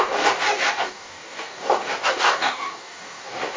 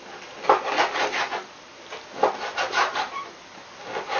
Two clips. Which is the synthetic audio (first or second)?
first